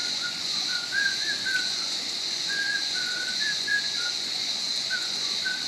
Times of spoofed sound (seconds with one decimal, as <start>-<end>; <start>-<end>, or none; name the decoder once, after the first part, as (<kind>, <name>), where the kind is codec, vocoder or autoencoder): 0.0-5.7 (vocoder, Vocos)